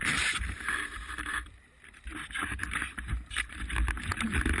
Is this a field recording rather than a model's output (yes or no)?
no